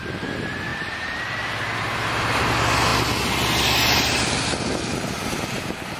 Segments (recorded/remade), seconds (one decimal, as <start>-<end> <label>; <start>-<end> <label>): 0.0-0.7 recorded; 0.7-1.2 remade; 1.2-6.0 recorded